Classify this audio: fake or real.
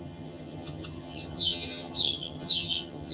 fake